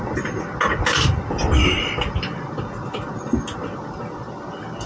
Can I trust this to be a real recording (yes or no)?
yes